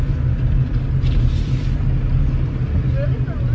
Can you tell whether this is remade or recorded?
recorded